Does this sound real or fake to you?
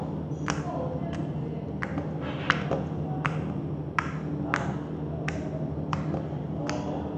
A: real